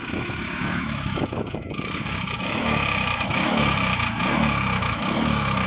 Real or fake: fake